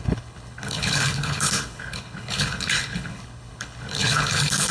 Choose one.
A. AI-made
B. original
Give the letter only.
A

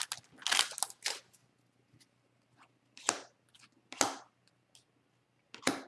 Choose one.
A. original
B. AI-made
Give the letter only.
A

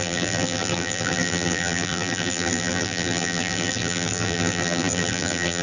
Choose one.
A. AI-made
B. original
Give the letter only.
A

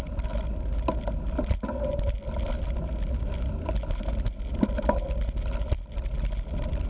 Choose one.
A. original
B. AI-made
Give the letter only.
A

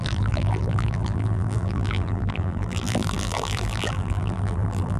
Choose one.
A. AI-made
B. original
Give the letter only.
A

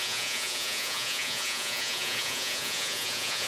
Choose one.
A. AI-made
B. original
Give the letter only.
A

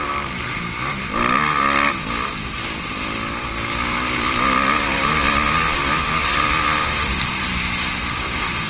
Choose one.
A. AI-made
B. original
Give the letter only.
B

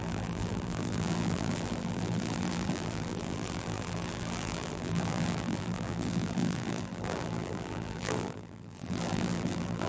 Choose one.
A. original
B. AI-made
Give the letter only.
B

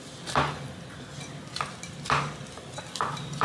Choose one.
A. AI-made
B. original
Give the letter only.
B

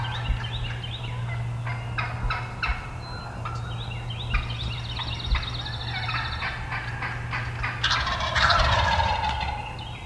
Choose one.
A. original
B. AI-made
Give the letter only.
A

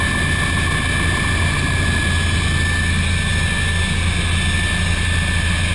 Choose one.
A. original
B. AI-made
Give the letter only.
A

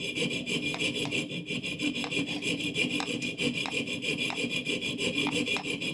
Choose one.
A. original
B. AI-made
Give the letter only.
B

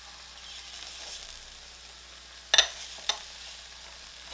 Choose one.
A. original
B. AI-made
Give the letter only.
A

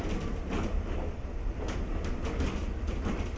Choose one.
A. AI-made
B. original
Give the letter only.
B